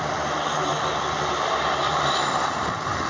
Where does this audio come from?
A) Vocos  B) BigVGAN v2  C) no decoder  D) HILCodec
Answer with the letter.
C